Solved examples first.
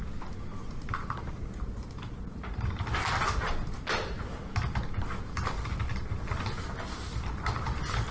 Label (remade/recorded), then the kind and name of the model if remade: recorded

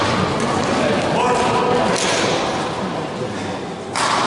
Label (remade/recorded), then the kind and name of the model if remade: recorded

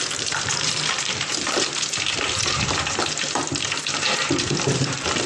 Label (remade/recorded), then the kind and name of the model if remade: remade, vocoder, BigVGAN v2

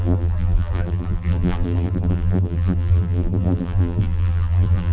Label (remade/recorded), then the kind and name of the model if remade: remade, vocoder, BigVGAN v2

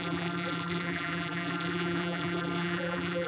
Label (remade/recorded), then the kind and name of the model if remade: remade, vocoder, BigVGAN v2